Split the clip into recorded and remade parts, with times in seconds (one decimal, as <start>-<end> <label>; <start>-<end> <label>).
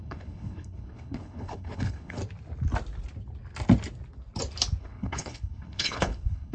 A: 0.0-2.2 remade; 2.2-4.8 recorded; 4.8-6.5 remade